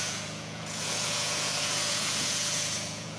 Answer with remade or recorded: remade